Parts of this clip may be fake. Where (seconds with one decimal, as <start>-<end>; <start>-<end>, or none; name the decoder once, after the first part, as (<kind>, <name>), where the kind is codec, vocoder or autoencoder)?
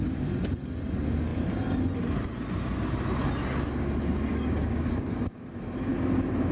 4.3-5.2 (codec, DAC)